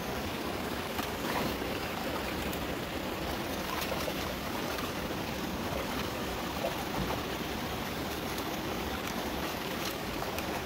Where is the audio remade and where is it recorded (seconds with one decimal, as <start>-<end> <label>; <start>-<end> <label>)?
0.0-2.0 remade; 2.0-3.5 recorded; 3.5-6.3 remade; 6.3-7.8 recorded; 7.8-10.7 remade